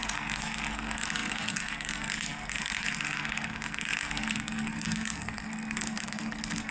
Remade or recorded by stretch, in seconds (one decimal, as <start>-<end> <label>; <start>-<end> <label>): 0.0-6.7 remade